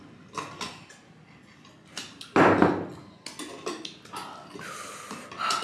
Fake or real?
real